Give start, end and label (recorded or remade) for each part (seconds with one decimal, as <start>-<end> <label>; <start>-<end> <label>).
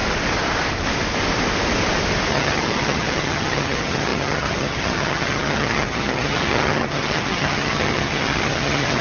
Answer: 0.0-2.3 recorded; 2.3-9.0 remade